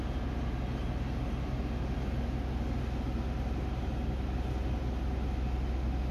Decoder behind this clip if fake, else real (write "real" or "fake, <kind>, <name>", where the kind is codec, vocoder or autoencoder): real